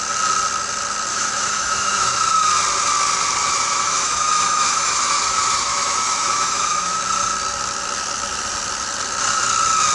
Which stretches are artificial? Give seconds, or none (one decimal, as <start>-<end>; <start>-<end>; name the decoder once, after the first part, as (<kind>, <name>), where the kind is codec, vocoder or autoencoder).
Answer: 1.1-2.2 (autoencoder, DAC-VAE); 3.4-7.0